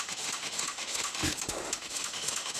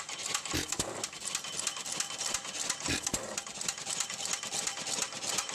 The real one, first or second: second